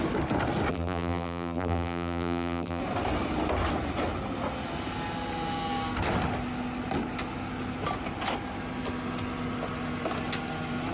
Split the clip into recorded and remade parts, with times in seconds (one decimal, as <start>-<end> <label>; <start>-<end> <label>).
0.0-0.7 recorded; 0.7-2.8 remade; 2.8-10.9 recorded